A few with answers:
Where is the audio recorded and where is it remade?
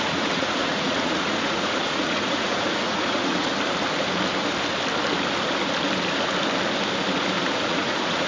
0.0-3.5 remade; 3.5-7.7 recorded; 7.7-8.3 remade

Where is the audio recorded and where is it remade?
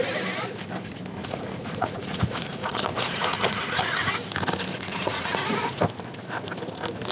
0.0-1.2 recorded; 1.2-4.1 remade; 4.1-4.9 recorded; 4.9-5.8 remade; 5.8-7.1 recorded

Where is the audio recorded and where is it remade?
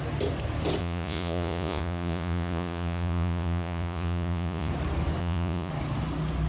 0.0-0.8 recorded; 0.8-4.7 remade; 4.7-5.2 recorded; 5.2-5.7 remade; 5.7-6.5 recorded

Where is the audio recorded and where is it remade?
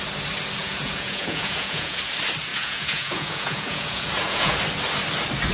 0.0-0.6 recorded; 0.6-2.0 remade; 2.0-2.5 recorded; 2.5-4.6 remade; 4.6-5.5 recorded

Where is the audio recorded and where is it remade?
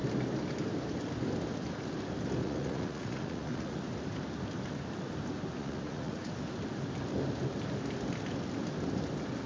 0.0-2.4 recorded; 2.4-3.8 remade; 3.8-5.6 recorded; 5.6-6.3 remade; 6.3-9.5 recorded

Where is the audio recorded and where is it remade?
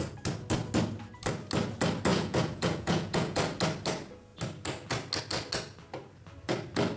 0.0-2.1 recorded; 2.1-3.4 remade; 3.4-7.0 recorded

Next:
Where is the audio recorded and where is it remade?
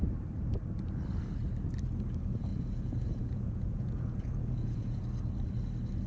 0.0-2.5 recorded; 2.5-5.0 remade; 5.0-6.1 recorded